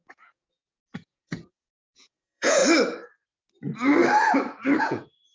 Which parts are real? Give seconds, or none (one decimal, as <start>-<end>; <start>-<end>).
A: 2.6-4.8